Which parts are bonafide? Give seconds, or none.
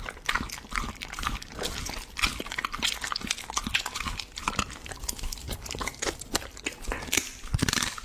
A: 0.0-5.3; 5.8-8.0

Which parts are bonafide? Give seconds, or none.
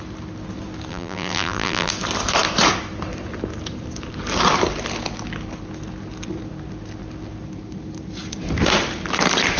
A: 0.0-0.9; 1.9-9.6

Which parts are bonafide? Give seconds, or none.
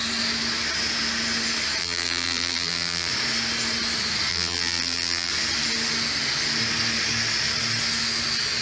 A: 0.0-1.8; 3.1-4.3; 5.3-8.6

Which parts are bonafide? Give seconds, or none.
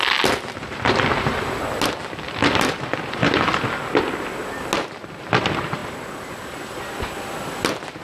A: 0.0-8.0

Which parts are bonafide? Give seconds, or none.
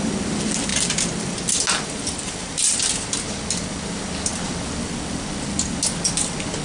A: 0.0-6.6